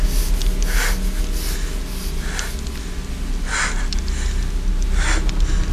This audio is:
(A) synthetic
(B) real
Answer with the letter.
B